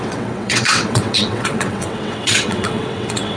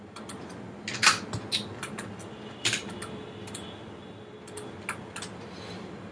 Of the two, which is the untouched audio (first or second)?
second